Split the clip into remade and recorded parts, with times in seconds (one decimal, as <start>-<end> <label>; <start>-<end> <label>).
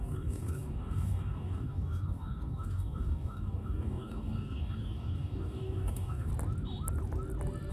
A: 0.0-6.3 remade; 6.3-7.7 recorded